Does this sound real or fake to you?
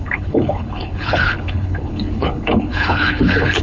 fake